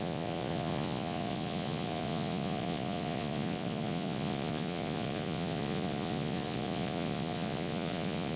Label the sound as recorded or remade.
remade